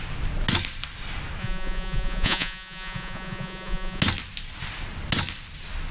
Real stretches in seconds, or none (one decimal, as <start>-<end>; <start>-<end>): 0.0-1.4; 4.0-5.9